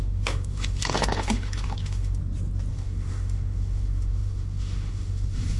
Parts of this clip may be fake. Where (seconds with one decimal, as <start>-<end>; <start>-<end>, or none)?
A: 0.0-2.2; 2.7-5.6